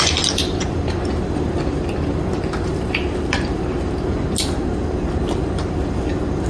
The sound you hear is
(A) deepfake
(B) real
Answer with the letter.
B